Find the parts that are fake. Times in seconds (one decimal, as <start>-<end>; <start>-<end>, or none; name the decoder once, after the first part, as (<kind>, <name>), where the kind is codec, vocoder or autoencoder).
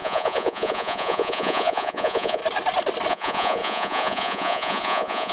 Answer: 0.0-2.4 (vocoder, Vocos); 3.1-5.3